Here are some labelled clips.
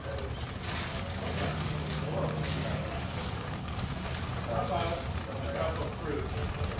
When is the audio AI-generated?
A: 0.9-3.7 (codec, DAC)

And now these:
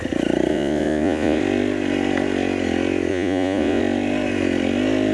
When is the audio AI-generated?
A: 0.5-1.4 (vocoder, Vocos); 3.1-3.8

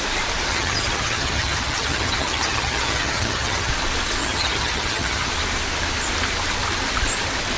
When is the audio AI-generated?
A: 0.5-3.7 (vocoder, HiFi-GAN); 4.2-5.3

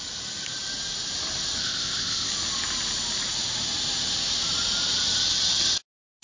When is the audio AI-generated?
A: 1.6-2.3 (codec, ZipCodec)